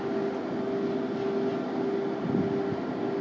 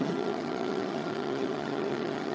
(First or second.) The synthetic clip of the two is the second